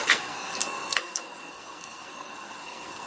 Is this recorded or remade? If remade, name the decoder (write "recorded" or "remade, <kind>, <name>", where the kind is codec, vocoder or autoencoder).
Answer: remade, codec, SNAC